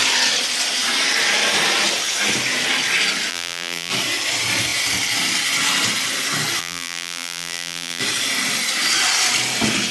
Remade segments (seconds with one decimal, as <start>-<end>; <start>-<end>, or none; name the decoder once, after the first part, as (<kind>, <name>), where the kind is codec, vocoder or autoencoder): 3.3-3.9 (vocoder, BigVGAN v2); 6.6-8.0